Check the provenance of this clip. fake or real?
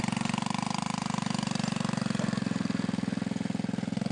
real